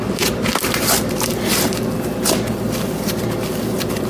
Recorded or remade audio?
recorded